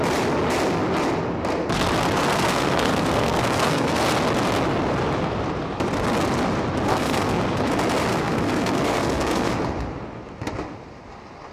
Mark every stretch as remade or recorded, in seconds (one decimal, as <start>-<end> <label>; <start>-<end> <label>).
0.0-2.3 recorded; 2.3-4.0 remade; 4.0-6.9 recorded; 6.9-7.4 remade; 7.4-8.1 recorded; 8.1-9.5 remade; 9.5-11.5 recorded

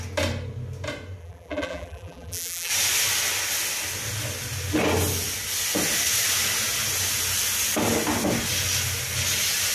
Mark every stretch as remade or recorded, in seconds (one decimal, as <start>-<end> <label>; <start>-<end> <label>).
0.0-1.2 recorded; 1.2-2.7 remade; 2.7-9.7 recorded

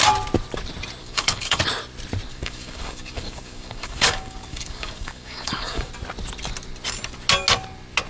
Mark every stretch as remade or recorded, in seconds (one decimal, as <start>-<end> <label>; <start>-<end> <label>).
0.0-1.0 recorded; 1.0-1.6 remade; 1.6-2.3 recorded; 2.3-5.9 remade; 5.9-8.1 recorded

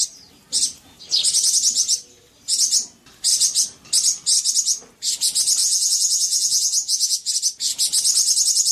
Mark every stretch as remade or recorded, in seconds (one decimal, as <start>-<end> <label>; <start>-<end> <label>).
0.0-5.6 recorded; 5.6-7.3 remade; 7.3-8.7 recorded

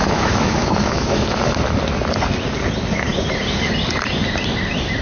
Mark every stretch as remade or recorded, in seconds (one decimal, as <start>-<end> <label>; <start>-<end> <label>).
0.0-1.4 remade; 1.4-5.0 recorded